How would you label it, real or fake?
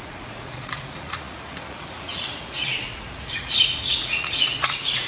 fake